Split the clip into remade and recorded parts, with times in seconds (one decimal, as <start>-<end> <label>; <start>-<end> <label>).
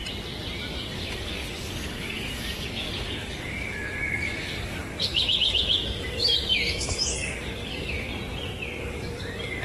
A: 0.0-0.7 recorded; 0.7-8.1 remade; 8.1-8.8 recorded; 8.8-9.6 remade